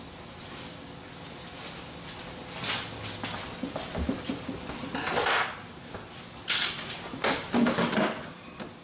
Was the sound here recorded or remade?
recorded